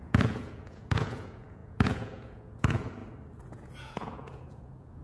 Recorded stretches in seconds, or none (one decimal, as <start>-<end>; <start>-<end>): 3.0-3.5